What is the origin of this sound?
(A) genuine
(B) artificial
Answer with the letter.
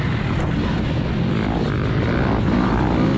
A